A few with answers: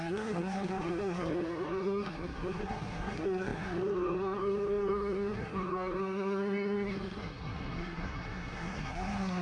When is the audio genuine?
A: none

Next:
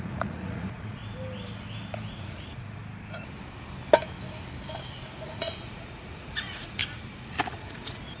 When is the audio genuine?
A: 1.0-2.1; 2.8-5.1; 6.8-7.5